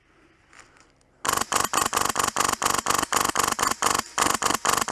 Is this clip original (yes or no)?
yes